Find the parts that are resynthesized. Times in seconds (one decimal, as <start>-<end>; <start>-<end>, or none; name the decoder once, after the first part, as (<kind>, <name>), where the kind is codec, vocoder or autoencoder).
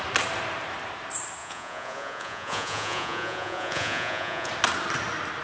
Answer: 1.4-4.5 (vocoder, Vocos)